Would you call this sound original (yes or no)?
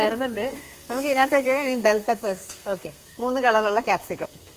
no